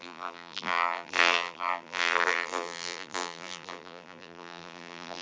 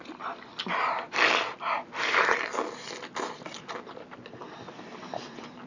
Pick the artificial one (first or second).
first